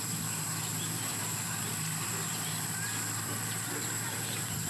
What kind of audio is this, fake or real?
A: fake